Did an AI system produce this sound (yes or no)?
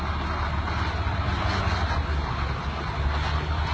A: no